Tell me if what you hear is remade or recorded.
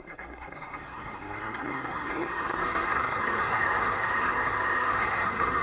remade